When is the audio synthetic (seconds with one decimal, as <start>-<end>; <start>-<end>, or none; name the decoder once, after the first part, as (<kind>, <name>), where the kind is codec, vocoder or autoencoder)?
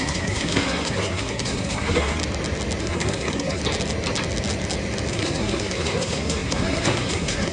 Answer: 0.0-2.2 (codec, SNAC); 2.8-3.6; 5.1-7.5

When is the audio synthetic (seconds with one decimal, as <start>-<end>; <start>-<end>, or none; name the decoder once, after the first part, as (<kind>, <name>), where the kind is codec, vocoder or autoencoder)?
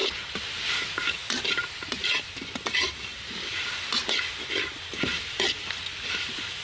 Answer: none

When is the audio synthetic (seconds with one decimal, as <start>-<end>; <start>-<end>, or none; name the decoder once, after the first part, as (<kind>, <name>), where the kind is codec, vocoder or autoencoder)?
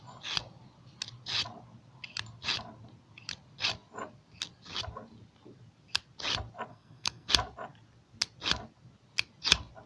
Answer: 6.7-7.3 (codec, SNAC)